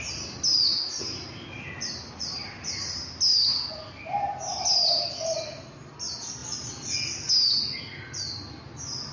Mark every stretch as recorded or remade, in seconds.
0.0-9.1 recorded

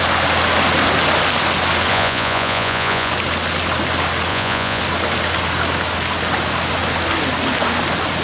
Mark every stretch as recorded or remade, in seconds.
0.0-1.9 recorded; 1.9-3.1 remade; 3.1-4.3 recorded; 4.3-4.8 remade; 4.8-8.2 recorded

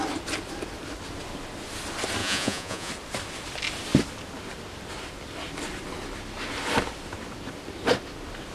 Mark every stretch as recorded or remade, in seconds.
0.0-2.2 recorded; 2.2-2.9 remade; 2.9-8.5 recorded

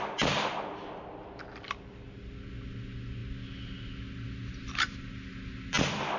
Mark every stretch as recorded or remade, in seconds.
0.0-6.2 recorded

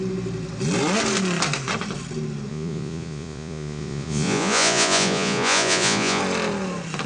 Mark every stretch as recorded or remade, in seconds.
0.0-2.5 recorded; 2.5-6.2 remade; 6.2-7.1 recorded

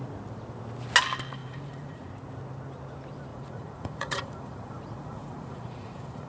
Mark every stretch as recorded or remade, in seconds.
0.0-1.4 recorded; 1.4-2.1 remade; 2.1-3.3 recorded; 3.3-6.3 remade

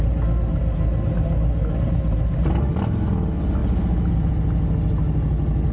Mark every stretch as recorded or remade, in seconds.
0.0-5.7 recorded

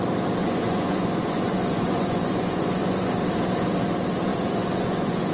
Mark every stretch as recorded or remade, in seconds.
0.0-0.4 recorded; 0.4-3.1 remade; 3.1-4.3 recorded; 4.3-5.3 remade